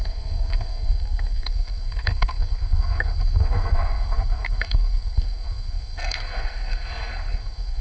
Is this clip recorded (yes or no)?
no